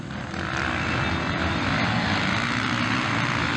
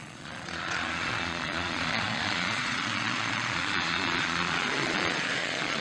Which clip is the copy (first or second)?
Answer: second